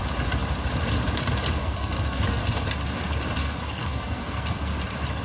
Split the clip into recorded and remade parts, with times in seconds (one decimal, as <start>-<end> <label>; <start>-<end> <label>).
0.0-1.6 recorded; 1.6-2.4 remade; 2.4-3.4 recorded; 3.4-4.8 remade; 4.8-5.2 recorded